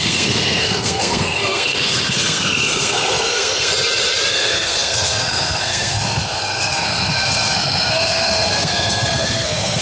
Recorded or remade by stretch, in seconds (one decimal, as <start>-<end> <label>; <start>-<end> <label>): 0.0-3.7 remade; 3.7-4.3 recorded; 4.3-9.8 remade